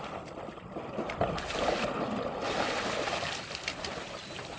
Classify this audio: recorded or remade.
recorded